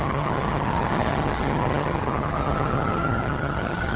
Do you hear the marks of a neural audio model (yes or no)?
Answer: yes